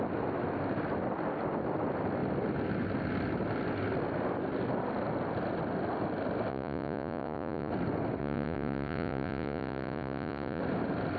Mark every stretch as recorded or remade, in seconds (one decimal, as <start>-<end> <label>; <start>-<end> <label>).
0.0-6.5 recorded; 6.5-7.7 remade; 7.7-8.2 recorded; 8.2-10.6 remade; 10.6-11.2 recorded

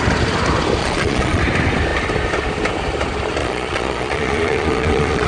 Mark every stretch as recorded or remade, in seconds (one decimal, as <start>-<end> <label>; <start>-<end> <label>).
0.0-0.8 recorded; 0.8-1.4 remade; 1.4-3.4 recorded; 3.4-5.3 remade

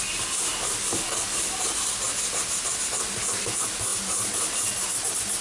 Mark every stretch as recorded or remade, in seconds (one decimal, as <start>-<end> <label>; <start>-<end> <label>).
0.0-5.4 recorded

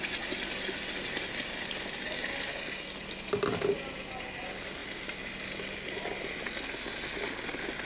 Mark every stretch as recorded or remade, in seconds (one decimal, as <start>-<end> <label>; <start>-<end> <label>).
0.0-7.8 recorded

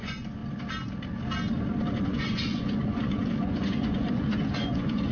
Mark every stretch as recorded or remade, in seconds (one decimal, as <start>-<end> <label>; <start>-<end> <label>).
0.0-0.4 remade; 0.4-2.0 recorded; 2.0-5.1 remade